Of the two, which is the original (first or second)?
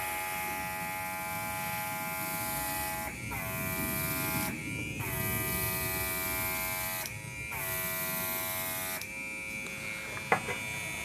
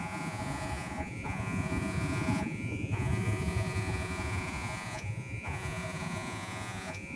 first